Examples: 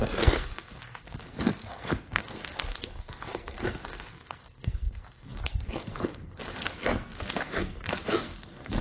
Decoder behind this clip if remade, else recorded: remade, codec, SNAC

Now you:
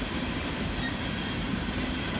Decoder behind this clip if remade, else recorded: recorded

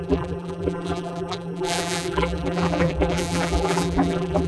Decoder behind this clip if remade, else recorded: remade, vocoder, BigVGAN v2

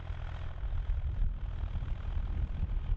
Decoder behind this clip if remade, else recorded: recorded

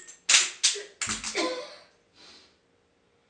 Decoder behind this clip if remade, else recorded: recorded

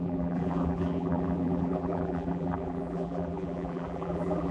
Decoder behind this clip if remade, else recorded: remade, vocoder, BigVGAN v2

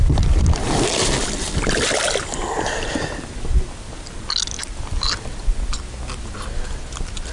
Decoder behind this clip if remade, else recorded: recorded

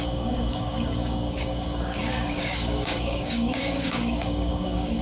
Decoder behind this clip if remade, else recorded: remade, codec, DAC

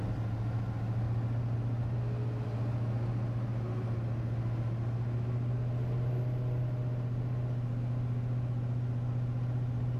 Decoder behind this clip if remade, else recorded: recorded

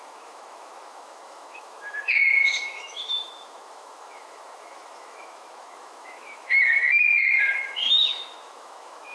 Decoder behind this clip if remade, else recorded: remade, autoencoder, DAC-VAE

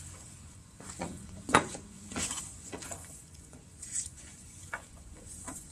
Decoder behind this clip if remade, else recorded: remade, vocoder, Vocos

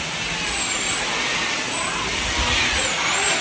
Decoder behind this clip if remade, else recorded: recorded